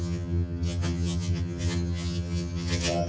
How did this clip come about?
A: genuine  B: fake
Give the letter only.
B